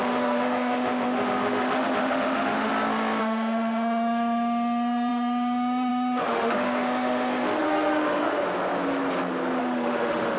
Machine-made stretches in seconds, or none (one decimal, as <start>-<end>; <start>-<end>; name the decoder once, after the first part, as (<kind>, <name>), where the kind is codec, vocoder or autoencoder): 0.0-2.7 (autoencoder, DAC-VAE); 3.2-8.4; 9.6-10.4